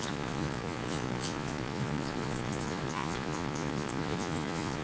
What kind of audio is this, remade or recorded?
remade